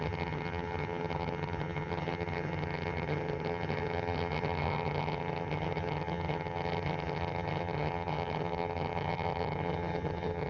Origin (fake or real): fake